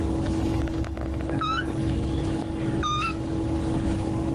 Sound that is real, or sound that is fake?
fake